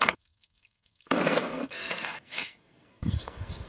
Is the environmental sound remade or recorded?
remade